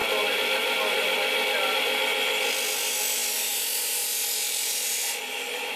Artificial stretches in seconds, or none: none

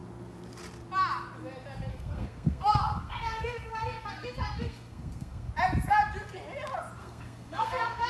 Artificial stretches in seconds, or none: 1.9-5.5 (codec, SNAC); 7.0-8.1

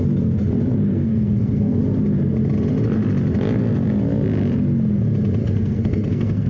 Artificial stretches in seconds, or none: 0.9-1.8 (codec, SNAC); 5.4-6.5